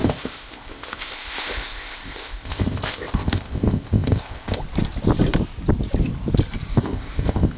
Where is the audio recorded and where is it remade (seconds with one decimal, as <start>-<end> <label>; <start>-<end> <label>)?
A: 0.0-4.6 remade; 4.6-6.7 recorded; 6.7-7.6 remade